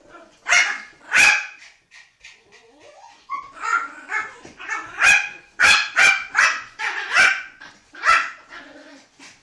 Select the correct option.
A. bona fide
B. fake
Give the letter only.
B